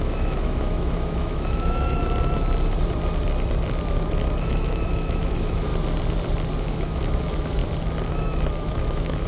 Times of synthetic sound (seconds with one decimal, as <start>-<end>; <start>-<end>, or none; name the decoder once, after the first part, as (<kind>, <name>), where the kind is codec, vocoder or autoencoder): 0.0-2.0 (autoencoder, DAC-VAE); 4.4-5.7; 6.6-7.6; 8.1-9.3